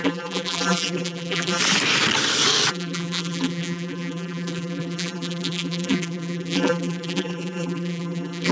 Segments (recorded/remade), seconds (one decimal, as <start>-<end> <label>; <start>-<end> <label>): 0.0-1.6 remade; 1.6-2.7 recorded; 2.7-8.5 remade